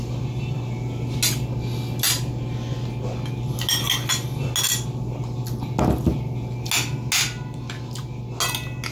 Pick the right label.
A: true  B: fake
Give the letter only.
A